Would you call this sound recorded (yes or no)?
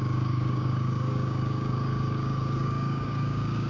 no